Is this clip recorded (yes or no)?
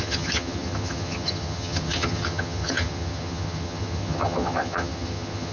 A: no